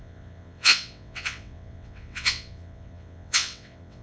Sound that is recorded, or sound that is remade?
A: remade